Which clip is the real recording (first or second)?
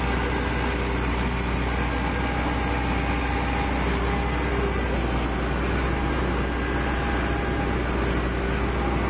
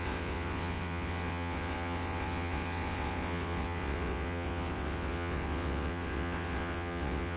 first